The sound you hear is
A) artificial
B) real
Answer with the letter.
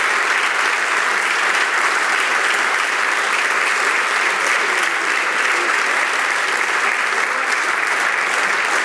B